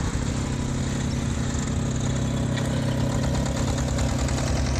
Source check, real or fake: real